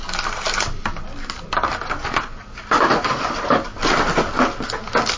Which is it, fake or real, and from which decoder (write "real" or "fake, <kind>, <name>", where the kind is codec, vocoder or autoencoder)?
real